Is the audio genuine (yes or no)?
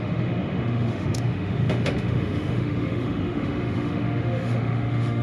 no